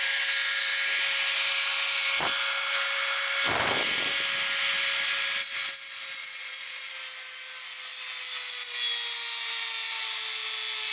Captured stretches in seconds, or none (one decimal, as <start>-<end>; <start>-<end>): 0.0-6.2; 6.9-10.9